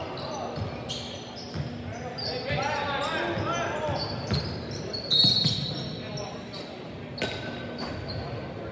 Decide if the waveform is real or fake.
real